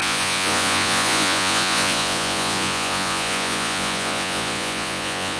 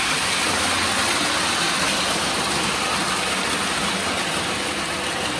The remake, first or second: first